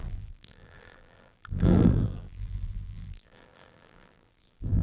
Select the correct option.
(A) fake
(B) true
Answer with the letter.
A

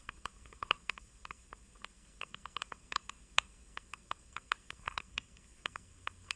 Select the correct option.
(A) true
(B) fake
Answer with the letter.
B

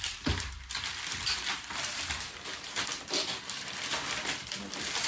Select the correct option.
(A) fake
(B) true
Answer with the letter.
A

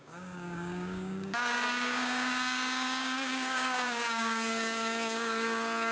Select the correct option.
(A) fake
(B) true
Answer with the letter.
A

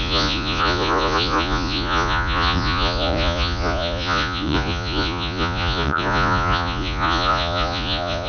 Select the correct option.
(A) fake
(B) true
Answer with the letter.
A